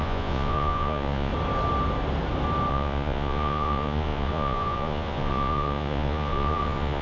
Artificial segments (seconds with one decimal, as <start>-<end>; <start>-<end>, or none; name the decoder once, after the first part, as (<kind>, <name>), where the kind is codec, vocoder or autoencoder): 0.0-1.3 (vocoder, Vocos); 2.7-7.0